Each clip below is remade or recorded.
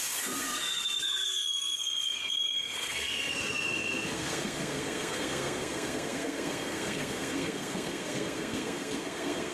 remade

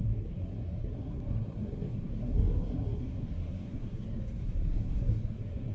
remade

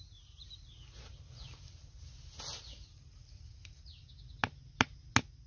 recorded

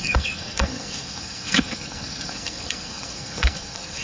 remade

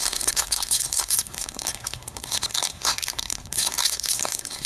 remade